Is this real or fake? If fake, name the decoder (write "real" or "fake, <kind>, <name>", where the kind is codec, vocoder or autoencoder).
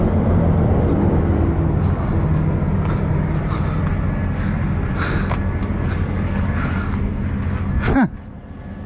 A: real